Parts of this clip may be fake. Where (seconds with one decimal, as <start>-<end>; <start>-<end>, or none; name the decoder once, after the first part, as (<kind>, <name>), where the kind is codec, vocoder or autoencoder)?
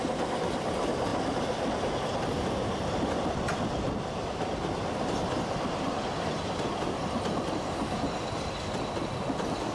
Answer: none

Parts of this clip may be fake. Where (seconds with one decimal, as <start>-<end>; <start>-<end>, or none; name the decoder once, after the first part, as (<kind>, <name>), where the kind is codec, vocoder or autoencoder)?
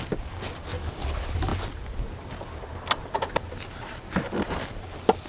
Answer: none